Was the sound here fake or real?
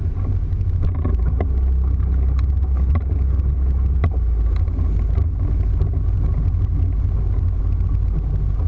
real